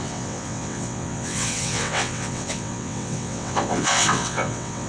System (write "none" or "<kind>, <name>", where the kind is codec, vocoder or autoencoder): vocoder, WaveNeXt